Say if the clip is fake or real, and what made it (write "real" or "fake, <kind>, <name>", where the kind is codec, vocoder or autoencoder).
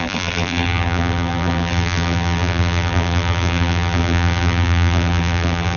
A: fake, vocoder, BigVGAN v2